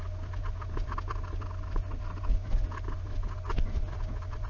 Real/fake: real